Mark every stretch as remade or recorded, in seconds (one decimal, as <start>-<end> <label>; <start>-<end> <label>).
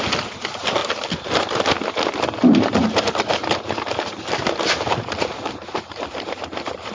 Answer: 0.0-3.4 recorded; 3.4-6.4 remade; 6.4-6.9 recorded